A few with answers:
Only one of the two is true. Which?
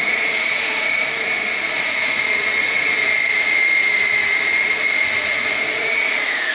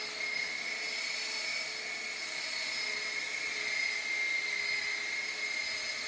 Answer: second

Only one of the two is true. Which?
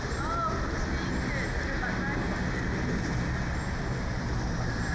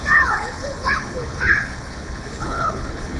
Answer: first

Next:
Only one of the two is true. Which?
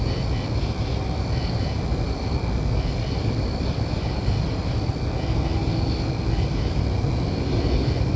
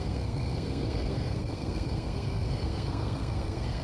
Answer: first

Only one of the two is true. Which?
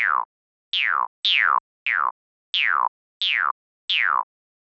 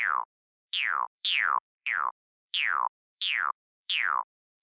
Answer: first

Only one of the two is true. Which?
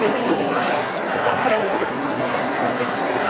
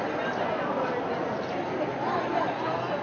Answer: second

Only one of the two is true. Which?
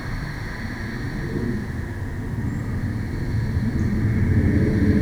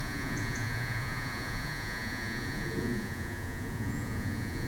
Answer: first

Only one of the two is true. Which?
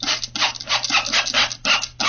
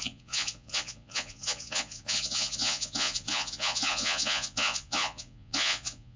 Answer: first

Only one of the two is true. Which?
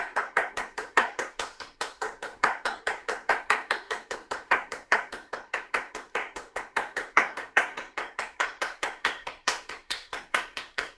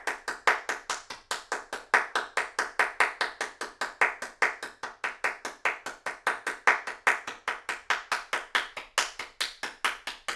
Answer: second